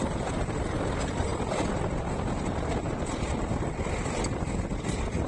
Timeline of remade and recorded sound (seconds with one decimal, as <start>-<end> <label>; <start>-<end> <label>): 0.0-5.3 recorded